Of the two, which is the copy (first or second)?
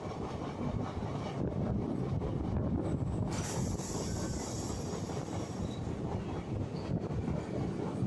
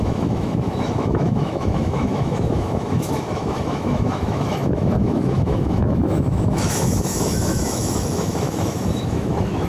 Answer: second